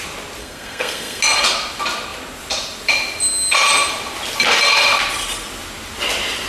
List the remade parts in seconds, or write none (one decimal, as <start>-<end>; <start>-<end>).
0.4-1.2